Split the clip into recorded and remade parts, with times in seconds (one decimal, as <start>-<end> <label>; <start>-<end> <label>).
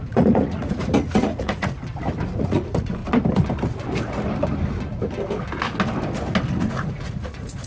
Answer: 0.0-1.8 remade; 1.8-2.4 recorded; 2.4-3.0 remade; 3.0-6.7 recorded; 6.7-7.7 remade